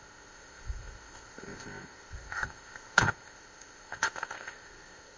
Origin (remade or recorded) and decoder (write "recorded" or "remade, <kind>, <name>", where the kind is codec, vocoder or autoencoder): remade, codec, ZipCodec